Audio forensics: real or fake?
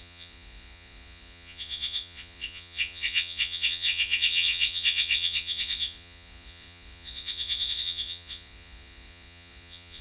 fake